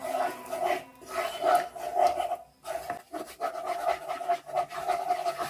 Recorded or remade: recorded